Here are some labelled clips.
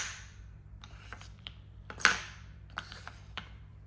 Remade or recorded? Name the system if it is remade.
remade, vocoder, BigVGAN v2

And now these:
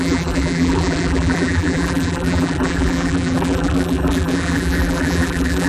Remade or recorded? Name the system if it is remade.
remade, vocoder, BigVGAN v2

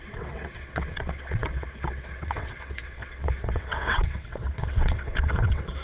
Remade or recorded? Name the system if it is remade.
remade, vocoder, WaveNeXt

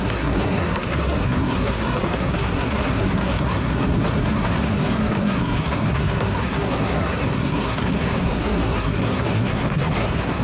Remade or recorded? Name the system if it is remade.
remade, codec, SNAC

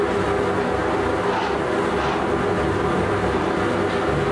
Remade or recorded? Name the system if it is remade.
recorded